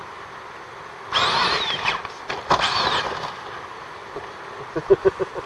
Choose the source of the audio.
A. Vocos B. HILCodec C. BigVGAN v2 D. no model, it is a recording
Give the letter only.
D